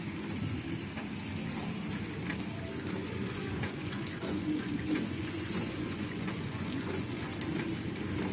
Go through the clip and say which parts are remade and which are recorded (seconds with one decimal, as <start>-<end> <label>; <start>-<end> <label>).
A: 0.0-3.0 recorded; 3.0-7.3 remade; 7.3-8.3 recorded